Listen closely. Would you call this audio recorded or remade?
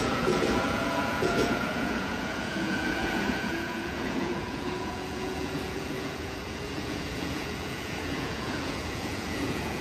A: remade